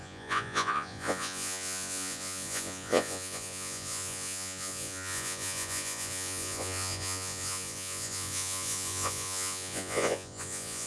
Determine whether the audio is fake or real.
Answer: fake